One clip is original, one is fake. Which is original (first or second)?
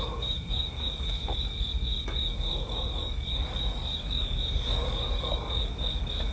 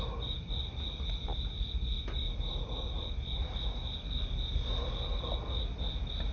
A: second